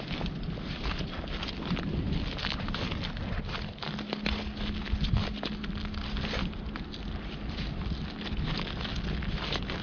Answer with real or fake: real